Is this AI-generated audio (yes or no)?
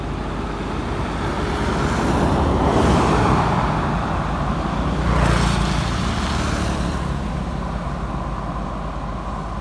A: no